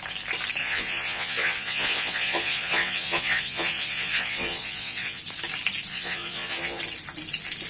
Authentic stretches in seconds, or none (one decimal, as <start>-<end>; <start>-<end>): 0.0-0.6; 5.2-5.9; 6.8-7.7